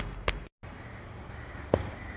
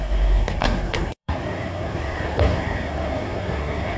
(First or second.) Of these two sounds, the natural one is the first